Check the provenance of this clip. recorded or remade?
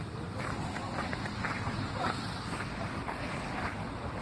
recorded